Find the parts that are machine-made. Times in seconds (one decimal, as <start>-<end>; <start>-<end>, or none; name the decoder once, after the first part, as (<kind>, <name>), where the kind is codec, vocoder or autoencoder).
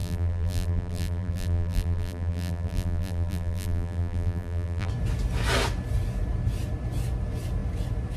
0.0-4.9 (vocoder, BigVGAN v2)